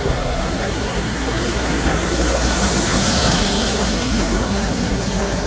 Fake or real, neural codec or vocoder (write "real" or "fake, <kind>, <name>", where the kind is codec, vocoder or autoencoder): fake, codec, SNAC